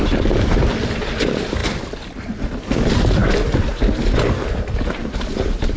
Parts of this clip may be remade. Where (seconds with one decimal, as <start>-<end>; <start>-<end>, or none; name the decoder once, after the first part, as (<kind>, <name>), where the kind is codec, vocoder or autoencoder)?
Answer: none

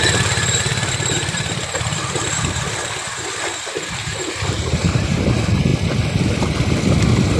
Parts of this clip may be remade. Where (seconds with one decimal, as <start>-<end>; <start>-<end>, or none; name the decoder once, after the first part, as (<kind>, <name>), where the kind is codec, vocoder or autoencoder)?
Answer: 4.0-5.2 (vocoder, BigVGAN v2)

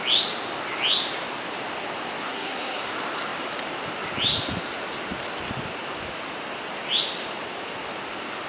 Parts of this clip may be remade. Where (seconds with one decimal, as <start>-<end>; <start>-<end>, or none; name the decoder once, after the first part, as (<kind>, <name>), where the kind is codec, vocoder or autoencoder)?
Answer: 2.2-2.9 (codec, SNAC)

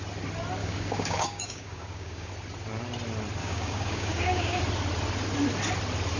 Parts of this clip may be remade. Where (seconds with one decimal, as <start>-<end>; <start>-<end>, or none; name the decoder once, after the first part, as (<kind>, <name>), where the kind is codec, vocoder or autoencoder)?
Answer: 0.6-2.3 (codec, DAC); 3.4-4.6